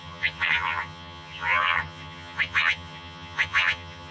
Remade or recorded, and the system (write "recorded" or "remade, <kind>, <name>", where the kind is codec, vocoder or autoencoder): remade, vocoder, HiFi-GAN